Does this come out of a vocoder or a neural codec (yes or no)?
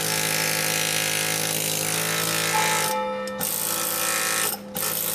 no